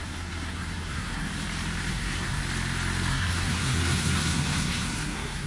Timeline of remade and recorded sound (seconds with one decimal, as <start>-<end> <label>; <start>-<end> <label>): 0.0-1.3 remade; 1.3-1.9 recorded; 1.9-2.4 remade; 2.4-3.1 recorded; 3.1-5.5 remade